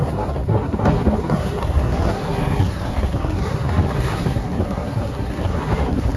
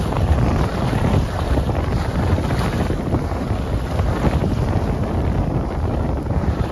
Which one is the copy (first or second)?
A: first